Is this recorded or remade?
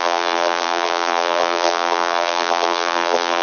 remade